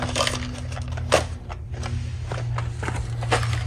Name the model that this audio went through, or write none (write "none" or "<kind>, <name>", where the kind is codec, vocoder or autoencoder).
none